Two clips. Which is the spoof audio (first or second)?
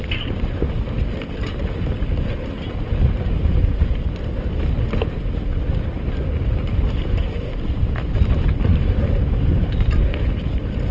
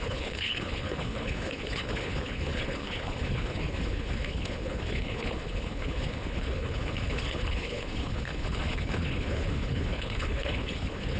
second